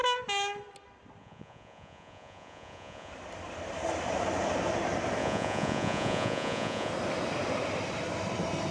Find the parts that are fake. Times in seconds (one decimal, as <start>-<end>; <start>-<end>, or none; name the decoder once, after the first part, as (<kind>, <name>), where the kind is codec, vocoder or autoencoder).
1.2-3.1 (vocoder, Vocos); 5.2-6.9